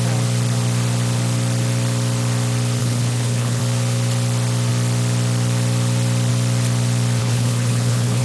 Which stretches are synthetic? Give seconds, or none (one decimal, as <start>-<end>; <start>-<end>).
2.8-3.6; 7.2-8.2

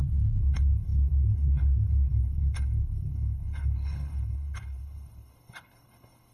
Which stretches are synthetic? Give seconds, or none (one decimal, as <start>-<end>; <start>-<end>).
0.0-6.3

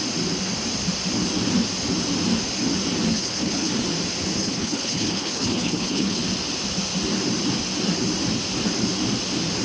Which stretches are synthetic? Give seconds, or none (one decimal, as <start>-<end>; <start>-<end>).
3.1-3.7; 4.4-6.2

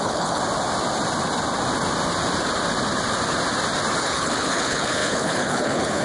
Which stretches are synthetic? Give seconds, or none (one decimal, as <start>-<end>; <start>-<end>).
0.0-0.4; 4.0-6.0

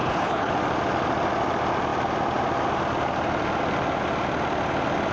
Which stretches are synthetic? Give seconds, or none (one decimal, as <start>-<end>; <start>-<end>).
0.0-0.5

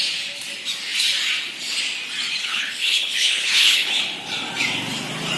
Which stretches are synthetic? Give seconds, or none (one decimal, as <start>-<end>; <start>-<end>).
2.4-4.0

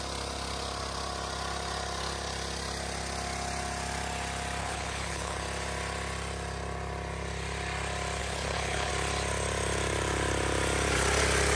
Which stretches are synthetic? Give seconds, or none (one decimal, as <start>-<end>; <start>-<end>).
4.6-5.4; 8.2-8.9

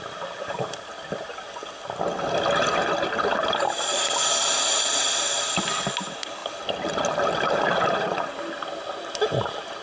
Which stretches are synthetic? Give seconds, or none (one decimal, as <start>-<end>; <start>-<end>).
none